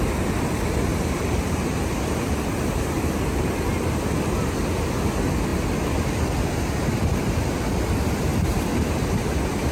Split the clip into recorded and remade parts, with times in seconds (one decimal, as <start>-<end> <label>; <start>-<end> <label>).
0.0-0.9 recorded; 0.9-3.0 remade; 3.0-9.7 recorded